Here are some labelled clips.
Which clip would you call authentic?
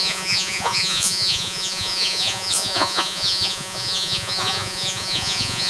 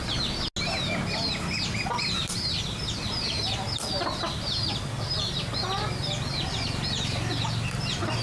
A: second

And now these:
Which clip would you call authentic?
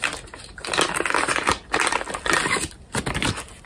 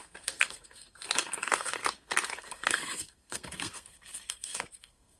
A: first